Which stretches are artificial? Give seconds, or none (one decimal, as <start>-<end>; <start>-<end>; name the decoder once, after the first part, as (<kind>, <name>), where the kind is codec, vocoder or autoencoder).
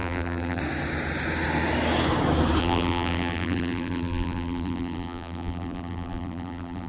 0.0-0.6 (vocoder, BigVGAN v2); 2.6-6.9